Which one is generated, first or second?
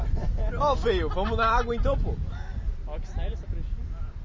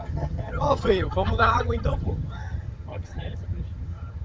second